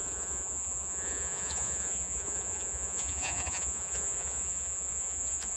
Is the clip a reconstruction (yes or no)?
yes